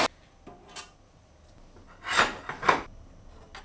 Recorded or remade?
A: recorded